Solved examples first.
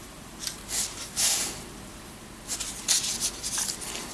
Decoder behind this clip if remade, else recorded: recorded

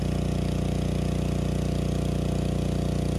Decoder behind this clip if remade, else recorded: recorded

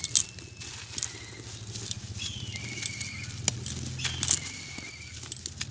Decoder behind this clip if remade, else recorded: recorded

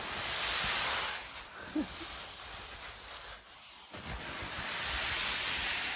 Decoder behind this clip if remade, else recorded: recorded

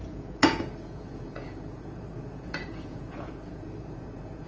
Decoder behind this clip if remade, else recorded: remade, vocoder, Vocos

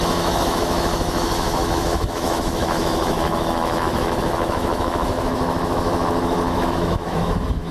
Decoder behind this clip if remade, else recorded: remade, autoencoder, DAC-VAE